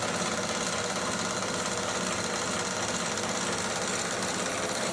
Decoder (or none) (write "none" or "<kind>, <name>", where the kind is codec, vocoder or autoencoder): none